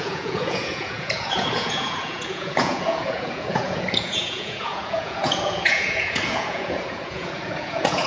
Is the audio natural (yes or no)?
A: no